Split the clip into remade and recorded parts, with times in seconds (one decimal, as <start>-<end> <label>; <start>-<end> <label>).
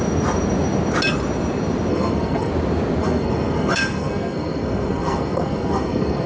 0.0-1.9 recorded; 1.9-2.5 remade; 2.5-3.0 recorded; 3.0-6.3 remade